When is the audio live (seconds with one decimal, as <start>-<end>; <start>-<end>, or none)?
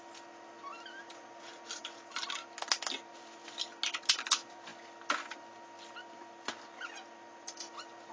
0.0-8.1